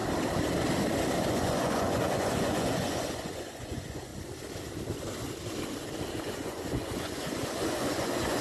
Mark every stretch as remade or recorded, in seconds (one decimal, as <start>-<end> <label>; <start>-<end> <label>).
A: 0.0-1.3 recorded; 1.3-4.1 remade; 4.1-6.2 recorded; 6.2-8.4 remade